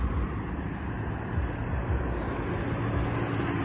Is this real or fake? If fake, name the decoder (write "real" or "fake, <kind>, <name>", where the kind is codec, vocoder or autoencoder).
real